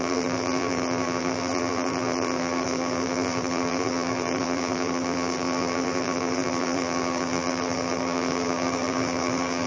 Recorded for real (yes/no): no